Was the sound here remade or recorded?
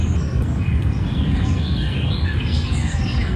remade